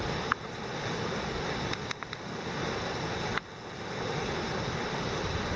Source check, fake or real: real